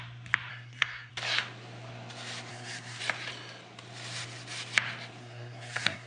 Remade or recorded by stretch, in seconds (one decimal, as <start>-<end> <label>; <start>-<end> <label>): 0.0-0.5 recorded; 0.5-1.1 remade; 1.1-2.5 recorded; 2.5-3.0 remade; 3.0-5.2 recorded; 5.2-6.1 remade